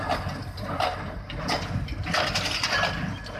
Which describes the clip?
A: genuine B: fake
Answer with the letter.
A